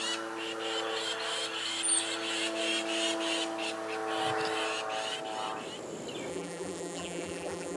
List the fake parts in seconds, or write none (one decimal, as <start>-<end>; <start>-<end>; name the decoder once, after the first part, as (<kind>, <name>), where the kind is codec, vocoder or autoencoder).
6.3-7.8 (vocoder, BigVGAN v2)